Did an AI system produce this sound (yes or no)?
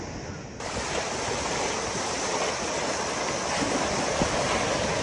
no